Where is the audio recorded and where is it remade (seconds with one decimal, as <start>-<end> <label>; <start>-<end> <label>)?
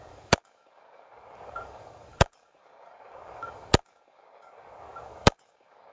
0.0-5.9 remade